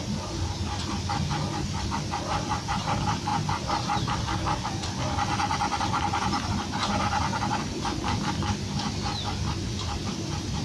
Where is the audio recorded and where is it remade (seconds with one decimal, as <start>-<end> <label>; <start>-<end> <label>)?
0.0-10.6 recorded